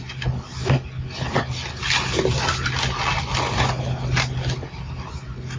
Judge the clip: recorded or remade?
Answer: recorded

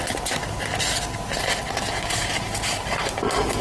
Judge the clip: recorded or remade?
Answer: recorded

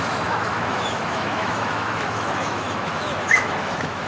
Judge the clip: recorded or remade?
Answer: remade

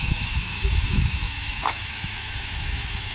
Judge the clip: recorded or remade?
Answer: remade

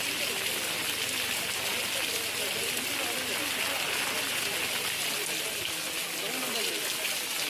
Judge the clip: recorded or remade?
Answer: recorded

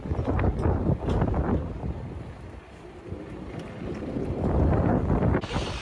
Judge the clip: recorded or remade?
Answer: recorded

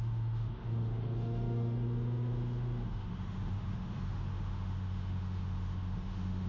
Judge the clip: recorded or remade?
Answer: remade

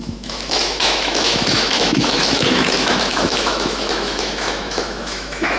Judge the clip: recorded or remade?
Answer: remade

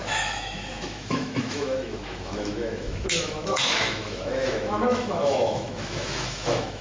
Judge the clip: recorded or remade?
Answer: remade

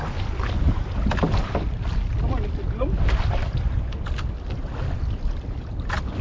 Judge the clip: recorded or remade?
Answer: recorded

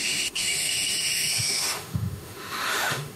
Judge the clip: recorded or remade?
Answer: remade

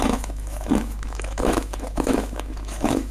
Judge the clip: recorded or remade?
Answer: remade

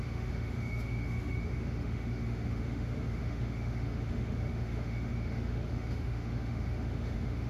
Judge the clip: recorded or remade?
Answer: remade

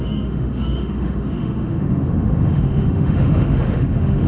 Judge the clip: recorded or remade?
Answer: remade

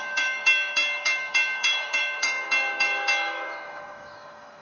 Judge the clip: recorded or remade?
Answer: remade